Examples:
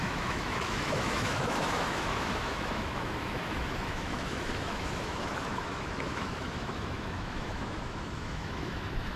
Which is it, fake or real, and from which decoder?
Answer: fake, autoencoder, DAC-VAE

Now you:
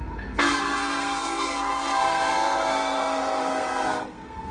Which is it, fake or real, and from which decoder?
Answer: fake, codec, SNAC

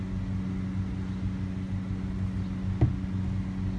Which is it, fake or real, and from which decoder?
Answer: real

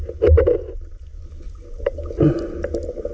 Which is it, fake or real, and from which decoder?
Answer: real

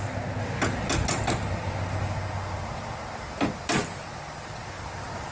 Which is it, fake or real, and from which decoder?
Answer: real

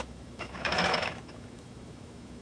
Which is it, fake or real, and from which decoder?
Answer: fake, autoencoder, DAC-VAE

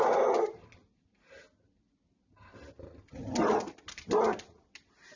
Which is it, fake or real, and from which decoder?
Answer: real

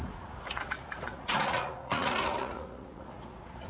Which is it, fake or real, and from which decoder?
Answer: fake, vocoder, Vocos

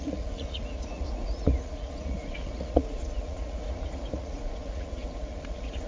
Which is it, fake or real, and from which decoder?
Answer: fake, vocoder, Vocos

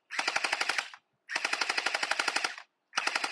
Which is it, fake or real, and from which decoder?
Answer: real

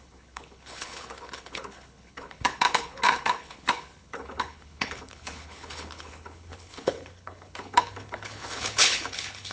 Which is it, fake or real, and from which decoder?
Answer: fake, codec, HILCodec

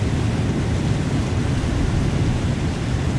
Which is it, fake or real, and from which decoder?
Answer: real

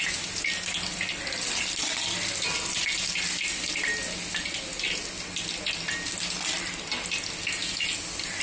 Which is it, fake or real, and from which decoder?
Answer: real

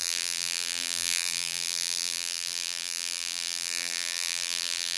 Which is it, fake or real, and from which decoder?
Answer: fake, vocoder, BigVGAN v2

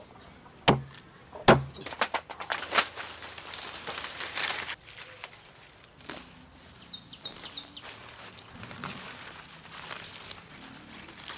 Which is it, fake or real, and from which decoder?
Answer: real